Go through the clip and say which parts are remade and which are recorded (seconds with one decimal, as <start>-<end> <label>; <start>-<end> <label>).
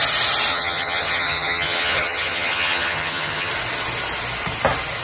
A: 0.0-0.5 recorded; 0.5-3.5 remade; 3.5-5.0 recorded